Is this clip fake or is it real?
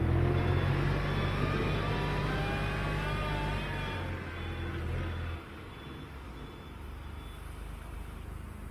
real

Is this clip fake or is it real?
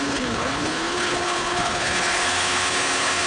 fake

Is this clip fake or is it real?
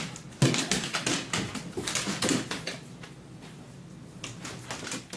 real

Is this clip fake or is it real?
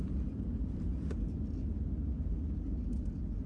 real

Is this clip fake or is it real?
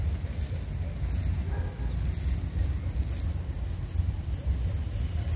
real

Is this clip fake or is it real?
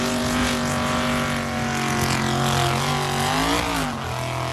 real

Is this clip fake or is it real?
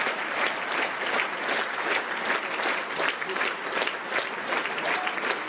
real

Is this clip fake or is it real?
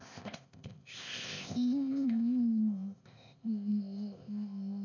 fake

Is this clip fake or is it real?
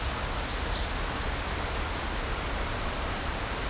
real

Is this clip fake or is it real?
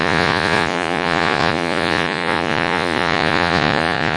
fake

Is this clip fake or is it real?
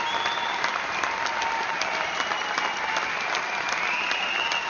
real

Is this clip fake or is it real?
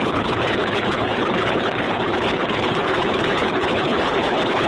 fake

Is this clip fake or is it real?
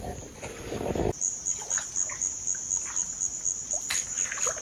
real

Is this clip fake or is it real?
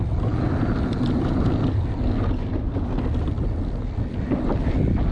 real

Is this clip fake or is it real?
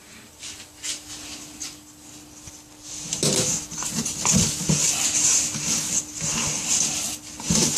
real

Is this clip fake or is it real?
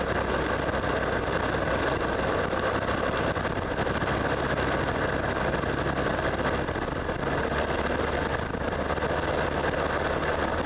real